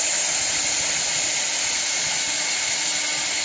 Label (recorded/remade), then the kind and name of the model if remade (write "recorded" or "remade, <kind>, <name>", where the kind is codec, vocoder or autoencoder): recorded